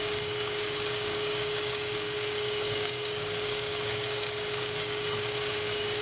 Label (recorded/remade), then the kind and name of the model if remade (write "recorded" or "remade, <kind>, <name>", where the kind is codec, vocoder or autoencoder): remade, codec, DAC